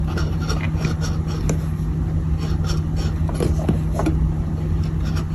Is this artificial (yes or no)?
no